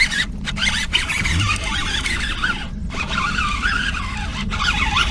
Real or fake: real